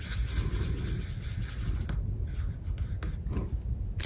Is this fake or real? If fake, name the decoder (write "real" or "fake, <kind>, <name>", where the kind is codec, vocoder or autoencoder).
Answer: real